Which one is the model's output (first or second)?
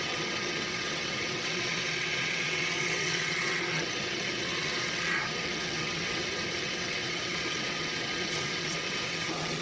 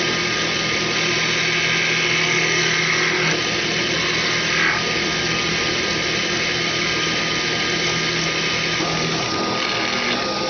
first